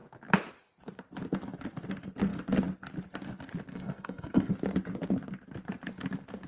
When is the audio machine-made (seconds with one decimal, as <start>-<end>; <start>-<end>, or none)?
3.7-4.5